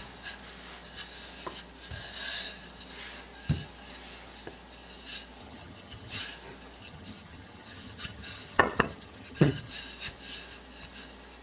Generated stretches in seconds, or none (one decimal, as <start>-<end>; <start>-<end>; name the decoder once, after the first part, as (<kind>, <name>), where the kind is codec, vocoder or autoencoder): 5.4-6.2 (vocoder, HiFi-GAN); 6.8-9.7